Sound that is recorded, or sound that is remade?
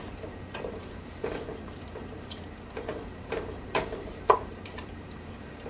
remade